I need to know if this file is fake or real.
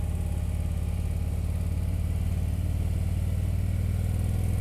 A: real